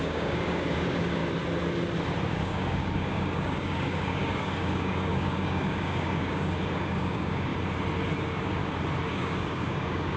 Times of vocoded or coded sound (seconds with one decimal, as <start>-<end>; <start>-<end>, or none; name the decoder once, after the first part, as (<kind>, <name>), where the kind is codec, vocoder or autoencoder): 0.0-1.2 (codec, DAC); 2.3-7.5; 8.2-8.6; 9.1-10.2